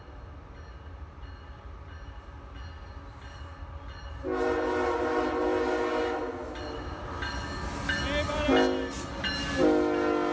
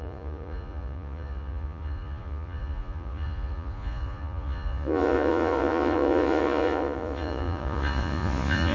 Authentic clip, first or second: first